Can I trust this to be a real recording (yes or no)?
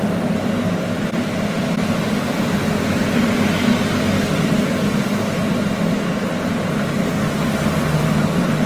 yes